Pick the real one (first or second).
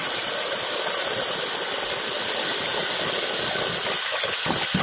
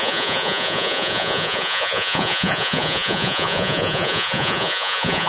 first